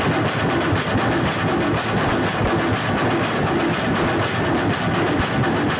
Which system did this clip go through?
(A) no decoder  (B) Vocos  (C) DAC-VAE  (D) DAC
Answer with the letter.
A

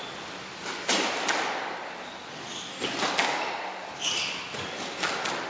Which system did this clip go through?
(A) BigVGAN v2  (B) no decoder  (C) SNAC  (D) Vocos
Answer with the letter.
B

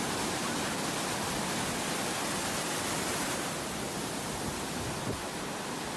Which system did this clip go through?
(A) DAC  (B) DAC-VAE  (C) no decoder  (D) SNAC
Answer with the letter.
C